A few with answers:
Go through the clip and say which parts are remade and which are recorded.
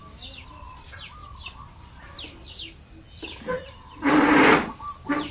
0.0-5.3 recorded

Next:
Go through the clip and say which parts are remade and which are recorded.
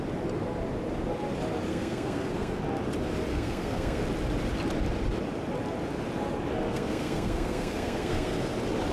0.0-1.7 recorded; 1.7-2.6 remade; 2.6-3.3 recorded; 3.3-4.0 remade; 4.0-6.7 recorded; 6.7-8.5 remade; 8.5-8.9 recorded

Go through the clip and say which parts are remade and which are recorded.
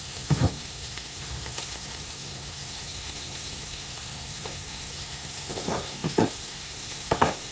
0.0-7.5 remade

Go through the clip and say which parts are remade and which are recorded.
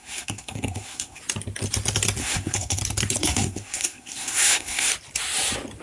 0.0-1.2 remade; 1.2-2.2 recorded; 2.2-2.8 remade; 2.8-3.2 recorded; 3.2-4.9 remade; 4.9-5.8 recorded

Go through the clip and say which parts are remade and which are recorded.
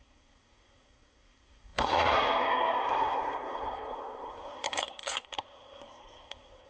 0.0-6.7 remade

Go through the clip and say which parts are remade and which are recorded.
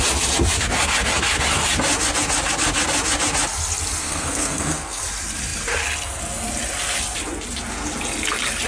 0.0-4.0 recorded; 4.0-5.0 remade; 5.0-8.7 recorded